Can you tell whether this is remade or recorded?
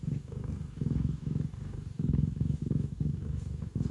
remade